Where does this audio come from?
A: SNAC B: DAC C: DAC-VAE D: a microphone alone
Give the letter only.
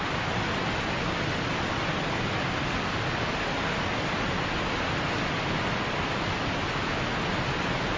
D